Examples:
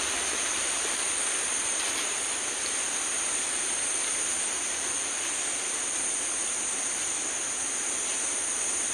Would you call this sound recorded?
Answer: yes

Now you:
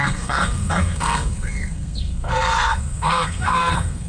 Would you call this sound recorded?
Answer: no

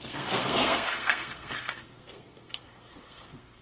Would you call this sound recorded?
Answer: no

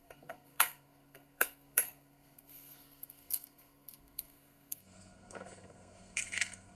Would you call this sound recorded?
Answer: no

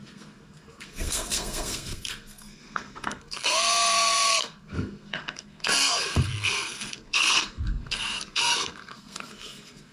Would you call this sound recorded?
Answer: no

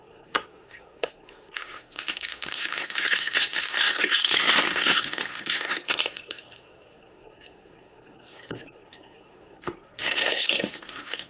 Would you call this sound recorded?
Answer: no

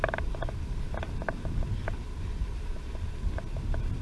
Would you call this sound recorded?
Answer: yes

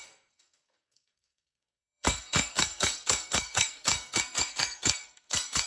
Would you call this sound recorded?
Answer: no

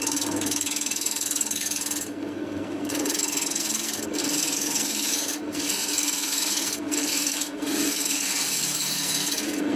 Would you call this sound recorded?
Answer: no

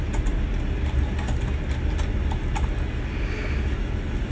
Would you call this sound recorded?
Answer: yes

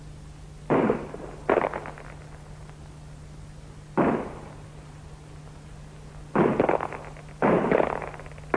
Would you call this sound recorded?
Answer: yes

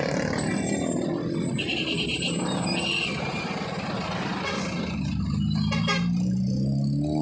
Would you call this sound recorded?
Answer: yes